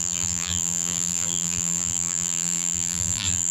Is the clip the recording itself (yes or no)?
no